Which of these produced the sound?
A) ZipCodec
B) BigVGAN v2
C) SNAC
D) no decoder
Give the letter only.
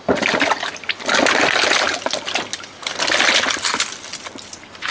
D